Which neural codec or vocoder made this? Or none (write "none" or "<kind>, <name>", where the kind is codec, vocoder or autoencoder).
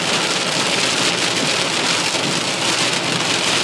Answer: none